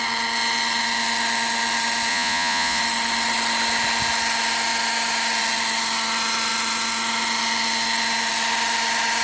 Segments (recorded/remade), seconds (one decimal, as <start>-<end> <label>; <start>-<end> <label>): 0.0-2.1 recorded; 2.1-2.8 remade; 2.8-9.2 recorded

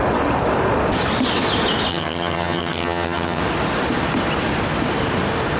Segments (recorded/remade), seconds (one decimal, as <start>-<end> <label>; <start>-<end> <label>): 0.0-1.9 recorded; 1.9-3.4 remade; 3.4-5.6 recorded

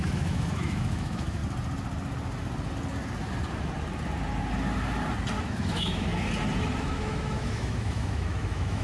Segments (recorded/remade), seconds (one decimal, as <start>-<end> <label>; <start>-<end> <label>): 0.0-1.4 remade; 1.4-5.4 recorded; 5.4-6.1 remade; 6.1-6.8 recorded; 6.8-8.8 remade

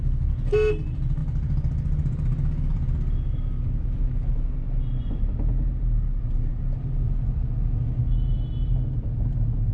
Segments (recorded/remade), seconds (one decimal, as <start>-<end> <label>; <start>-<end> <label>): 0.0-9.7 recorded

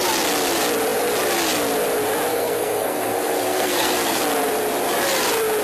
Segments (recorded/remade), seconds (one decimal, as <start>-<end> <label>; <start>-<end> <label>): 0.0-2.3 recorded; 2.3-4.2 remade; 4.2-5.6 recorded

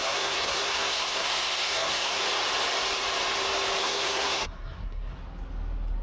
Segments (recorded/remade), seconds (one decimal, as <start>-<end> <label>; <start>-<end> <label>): 0.0-2.2 remade; 2.2-3.8 recorded; 3.8-5.1 remade; 5.1-6.0 recorded